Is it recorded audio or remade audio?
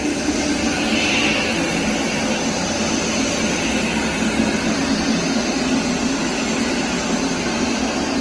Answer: recorded